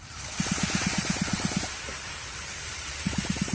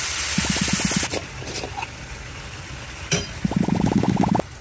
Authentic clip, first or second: second